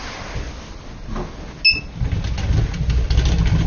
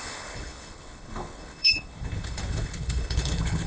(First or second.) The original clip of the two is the first